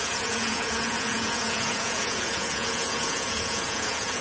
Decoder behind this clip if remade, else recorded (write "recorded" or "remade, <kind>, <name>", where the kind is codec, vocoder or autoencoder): remade, vocoder, Vocos